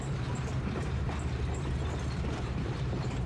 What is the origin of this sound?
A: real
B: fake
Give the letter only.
B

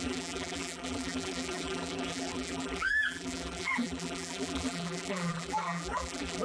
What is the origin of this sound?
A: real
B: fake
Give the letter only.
B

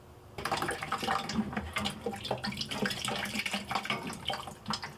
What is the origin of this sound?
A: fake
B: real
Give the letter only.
B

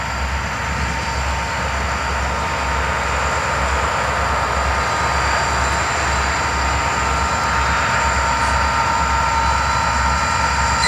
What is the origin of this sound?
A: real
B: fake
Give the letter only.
A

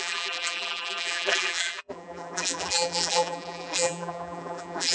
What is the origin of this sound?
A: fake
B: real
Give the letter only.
A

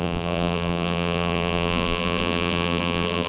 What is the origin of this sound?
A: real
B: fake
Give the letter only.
B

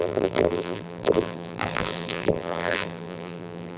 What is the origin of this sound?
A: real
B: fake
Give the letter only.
B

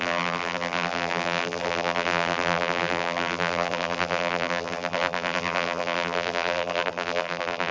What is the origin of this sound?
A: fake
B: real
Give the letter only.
A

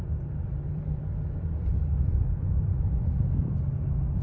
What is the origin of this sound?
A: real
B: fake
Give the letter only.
B